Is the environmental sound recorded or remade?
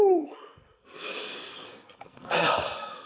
remade